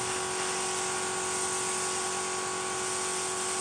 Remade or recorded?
recorded